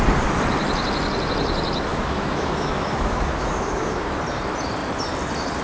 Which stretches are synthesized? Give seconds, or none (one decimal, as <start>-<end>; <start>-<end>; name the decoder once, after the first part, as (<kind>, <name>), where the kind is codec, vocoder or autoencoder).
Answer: 1.9-4.2 (autoencoder, DAC-VAE)